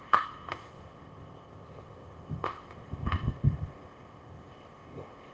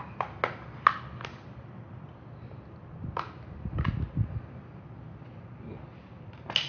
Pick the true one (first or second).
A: second